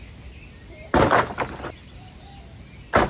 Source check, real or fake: real